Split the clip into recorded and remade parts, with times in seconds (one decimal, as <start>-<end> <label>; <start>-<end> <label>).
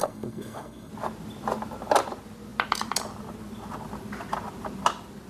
0.0-0.9 remade; 0.9-5.3 recorded